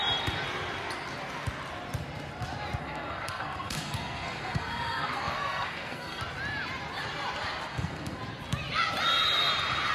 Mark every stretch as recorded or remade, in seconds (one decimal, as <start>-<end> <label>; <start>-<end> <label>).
0.0-2.8 recorded; 2.8-6.2 remade; 6.2-7.7 recorded; 7.7-8.2 remade; 8.2-9.9 recorded